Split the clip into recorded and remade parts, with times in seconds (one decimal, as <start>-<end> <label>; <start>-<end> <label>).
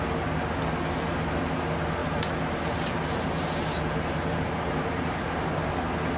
0.0-2.0 recorded; 2.0-5.7 remade; 5.7-6.2 recorded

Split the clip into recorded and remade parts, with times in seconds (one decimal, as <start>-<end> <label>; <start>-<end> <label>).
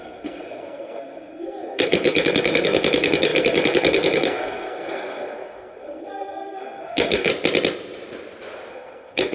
0.0-7.3 remade; 7.3-8.7 recorded; 8.7-9.3 remade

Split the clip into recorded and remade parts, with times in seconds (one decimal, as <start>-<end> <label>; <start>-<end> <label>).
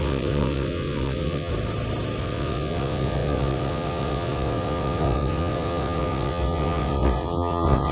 0.0-1.5 remade; 1.5-2.2 recorded; 2.2-7.9 remade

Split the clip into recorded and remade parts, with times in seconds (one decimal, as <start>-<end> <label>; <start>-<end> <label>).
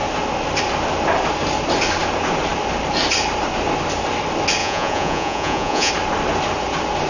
0.0-4.6 recorded; 4.6-5.9 remade; 5.9-7.1 recorded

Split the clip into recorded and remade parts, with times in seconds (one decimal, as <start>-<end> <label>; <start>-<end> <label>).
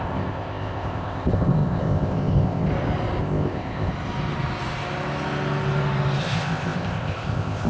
0.0-2.7 remade; 2.7-3.2 recorded; 3.2-3.9 remade; 3.9-6.2 recorded; 6.2-7.7 remade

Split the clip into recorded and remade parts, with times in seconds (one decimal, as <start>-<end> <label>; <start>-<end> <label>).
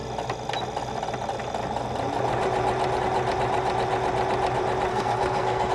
0.0-4.9 recorded; 4.9-5.7 remade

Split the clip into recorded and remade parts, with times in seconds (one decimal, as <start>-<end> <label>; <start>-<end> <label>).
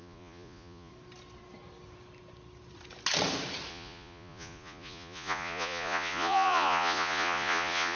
0.0-0.9 remade; 0.9-3.7 recorded; 3.7-8.0 remade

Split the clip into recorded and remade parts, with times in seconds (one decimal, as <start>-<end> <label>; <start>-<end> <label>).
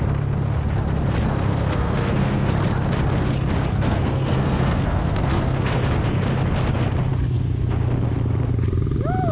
0.0-1.5 recorded; 1.5-2.5 remade; 2.5-3.7 recorded; 3.7-5.7 remade; 5.7-9.3 recorded